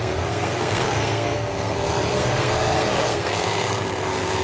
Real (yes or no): no